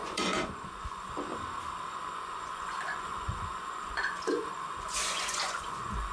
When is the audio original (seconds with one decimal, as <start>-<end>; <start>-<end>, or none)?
1.3-2.0